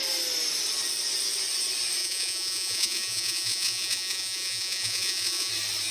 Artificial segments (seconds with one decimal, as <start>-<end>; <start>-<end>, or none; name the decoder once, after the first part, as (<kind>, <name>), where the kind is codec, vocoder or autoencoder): 2.0-5.5 (vocoder, Vocos)

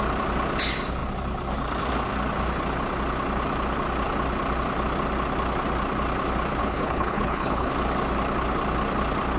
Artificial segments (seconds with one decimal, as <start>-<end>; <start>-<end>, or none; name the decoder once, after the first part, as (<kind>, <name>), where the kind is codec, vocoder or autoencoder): 6.6-7.7 (codec, HILCodec)

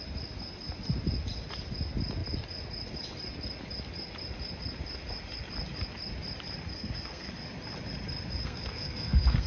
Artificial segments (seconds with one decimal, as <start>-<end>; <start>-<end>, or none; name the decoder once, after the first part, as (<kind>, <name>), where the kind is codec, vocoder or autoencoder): 6.7-7.3 (codec, SNAC); 8.4-9.5